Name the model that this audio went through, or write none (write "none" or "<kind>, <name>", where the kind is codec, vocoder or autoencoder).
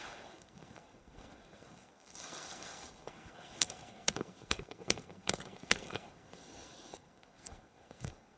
codec, SNAC